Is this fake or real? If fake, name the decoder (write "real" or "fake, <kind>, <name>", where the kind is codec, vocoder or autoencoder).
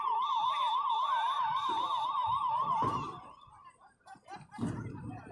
fake, vocoder, BigVGAN v2